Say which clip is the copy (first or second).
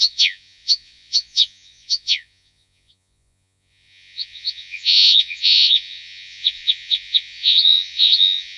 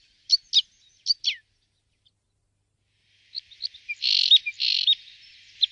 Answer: first